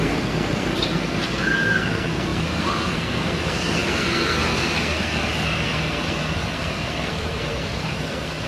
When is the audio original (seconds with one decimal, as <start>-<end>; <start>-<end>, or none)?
none